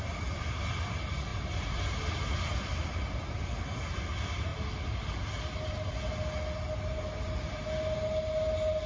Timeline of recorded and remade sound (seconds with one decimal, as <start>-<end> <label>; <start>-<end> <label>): 0.0-8.9 recorded